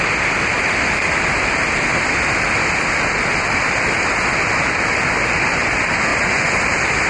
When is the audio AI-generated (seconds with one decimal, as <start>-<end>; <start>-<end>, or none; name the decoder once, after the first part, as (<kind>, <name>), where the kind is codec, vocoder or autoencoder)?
6.1-6.6 (vocoder, Vocos)